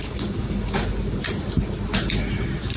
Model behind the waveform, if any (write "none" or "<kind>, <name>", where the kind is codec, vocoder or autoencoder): none